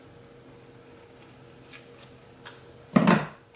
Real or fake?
real